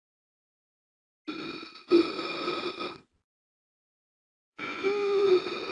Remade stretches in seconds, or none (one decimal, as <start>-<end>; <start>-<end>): 3.4-5.3